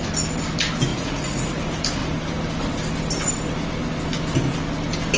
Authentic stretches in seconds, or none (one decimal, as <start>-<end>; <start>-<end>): 0.0-0.9; 1.6-5.2